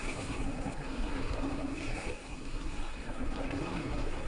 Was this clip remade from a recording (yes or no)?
yes